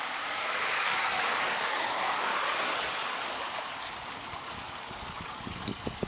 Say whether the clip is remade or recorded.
remade